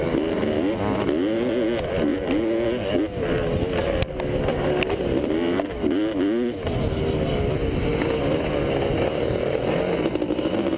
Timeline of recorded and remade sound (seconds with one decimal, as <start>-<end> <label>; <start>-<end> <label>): 0.0-10.8 recorded